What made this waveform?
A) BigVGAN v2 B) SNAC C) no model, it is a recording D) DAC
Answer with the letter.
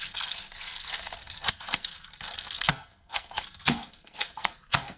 B